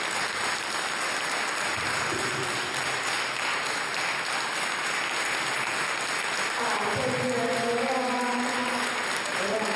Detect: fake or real real